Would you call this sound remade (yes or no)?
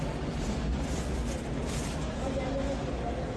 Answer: no